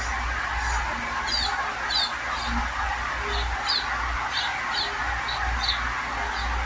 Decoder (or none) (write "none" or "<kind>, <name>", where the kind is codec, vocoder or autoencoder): none